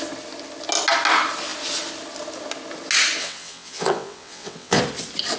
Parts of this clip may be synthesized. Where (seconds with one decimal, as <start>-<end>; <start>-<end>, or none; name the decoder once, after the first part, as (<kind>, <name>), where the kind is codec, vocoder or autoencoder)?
3.2-4.8 (vocoder, WaveNeXt)